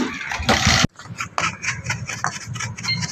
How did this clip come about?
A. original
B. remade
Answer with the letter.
A